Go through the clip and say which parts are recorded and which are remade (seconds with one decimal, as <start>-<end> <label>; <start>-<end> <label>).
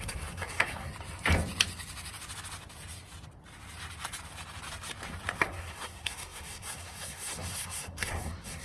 0.0-0.9 remade; 0.9-5.4 recorded; 5.4-8.6 remade